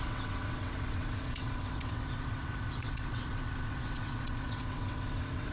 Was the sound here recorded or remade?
remade